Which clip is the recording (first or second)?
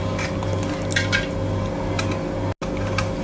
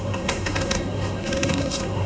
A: first